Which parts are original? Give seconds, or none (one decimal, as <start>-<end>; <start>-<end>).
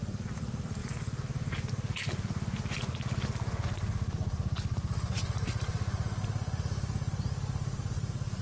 0.0-8.4